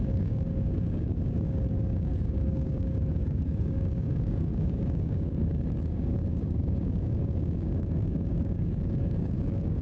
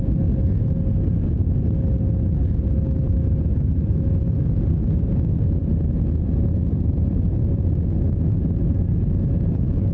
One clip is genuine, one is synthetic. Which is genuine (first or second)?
second